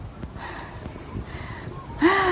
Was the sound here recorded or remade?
recorded